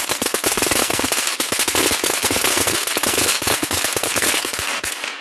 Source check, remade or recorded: remade